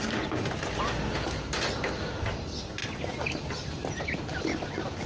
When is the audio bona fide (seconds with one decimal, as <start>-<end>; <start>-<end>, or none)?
0.0-5.1